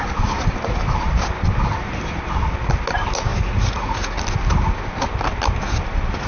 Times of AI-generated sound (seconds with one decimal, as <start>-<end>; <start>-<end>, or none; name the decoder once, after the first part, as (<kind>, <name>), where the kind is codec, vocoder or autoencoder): 3.3-4.2 (vocoder, Vocos)